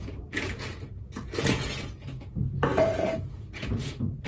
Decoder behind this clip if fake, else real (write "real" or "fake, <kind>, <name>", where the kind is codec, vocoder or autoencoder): fake, vocoder, Vocos